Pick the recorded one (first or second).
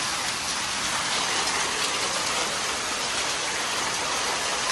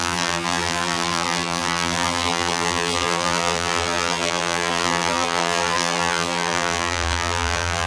first